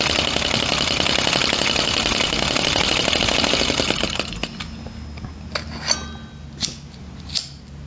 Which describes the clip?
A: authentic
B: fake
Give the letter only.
A